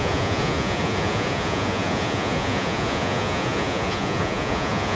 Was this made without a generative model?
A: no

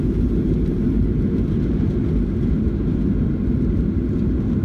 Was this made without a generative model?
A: yes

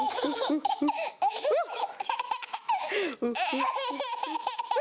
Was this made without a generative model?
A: no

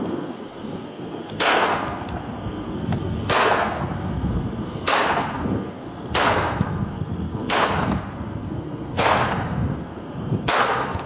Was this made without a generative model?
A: no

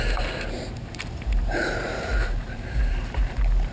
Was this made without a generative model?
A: no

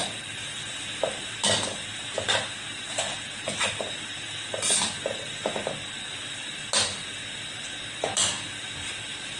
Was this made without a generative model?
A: yes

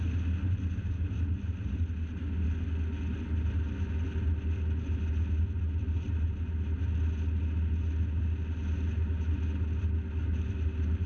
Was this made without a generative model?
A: yes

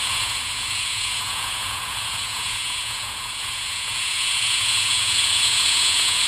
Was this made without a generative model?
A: no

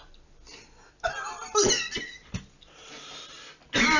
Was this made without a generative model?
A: yes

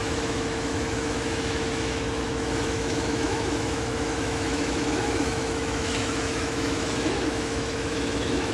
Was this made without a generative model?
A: no